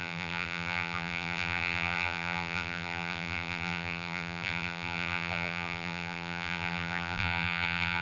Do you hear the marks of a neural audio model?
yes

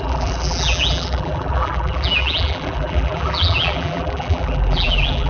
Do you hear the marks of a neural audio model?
yes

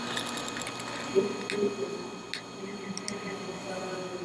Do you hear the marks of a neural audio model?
no